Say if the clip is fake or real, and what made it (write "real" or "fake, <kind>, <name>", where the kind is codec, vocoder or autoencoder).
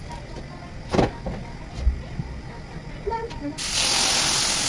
real